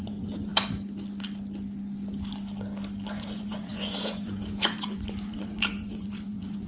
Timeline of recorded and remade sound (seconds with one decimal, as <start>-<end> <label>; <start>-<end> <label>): 0.0-0.5 remade; 0.5-3.1 recorded; 3.1-6.7 remade